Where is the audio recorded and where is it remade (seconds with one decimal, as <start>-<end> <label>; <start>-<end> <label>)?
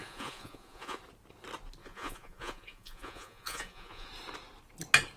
0.0-1.0 remade; 1.0-1.8 recorded; 1.8-4.1 remade; 4.1-5.2 recorded